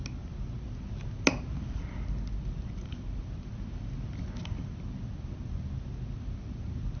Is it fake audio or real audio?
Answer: real